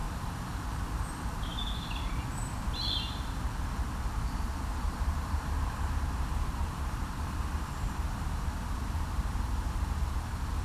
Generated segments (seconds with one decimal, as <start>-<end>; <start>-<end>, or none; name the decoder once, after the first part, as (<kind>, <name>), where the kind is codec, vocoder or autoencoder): 0.0-1.5 (vocoder, BigVGAN v2); 4.8-10.6